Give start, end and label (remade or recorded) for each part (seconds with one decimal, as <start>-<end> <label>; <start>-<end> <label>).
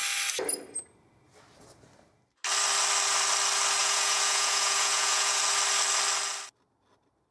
0.0-3.8 recorded; 3.8-5.4 remade; 5.4-7.3 recorded